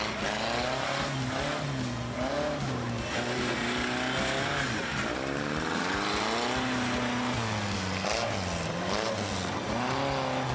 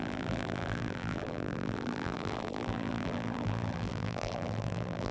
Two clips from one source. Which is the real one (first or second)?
first